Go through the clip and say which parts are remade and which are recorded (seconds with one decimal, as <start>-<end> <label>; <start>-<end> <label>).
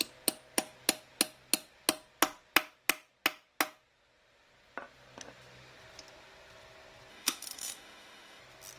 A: 0.0-7.1 recorded; 7.1-8.4 remade; 8.4-8.8 recorded